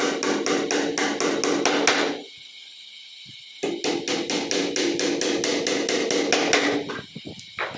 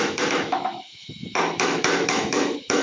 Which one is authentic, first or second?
first